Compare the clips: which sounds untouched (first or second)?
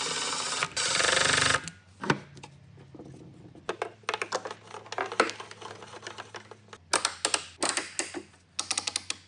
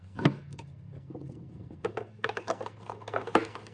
first